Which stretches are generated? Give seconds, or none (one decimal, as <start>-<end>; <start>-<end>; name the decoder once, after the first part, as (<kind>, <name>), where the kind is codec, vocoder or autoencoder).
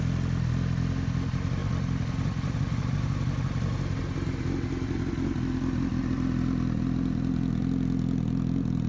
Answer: 1.6-2.9 (vocoder, BigVGAN v2)